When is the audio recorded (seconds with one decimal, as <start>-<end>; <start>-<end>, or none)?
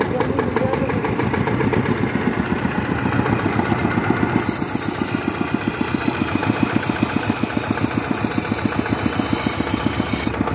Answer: 0.0-10.5